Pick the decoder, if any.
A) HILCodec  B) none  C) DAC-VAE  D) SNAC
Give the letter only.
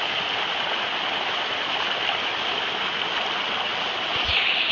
B